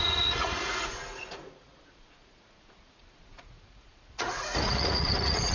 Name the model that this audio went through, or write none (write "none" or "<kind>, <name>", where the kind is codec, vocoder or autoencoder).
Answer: vocoder, Vocos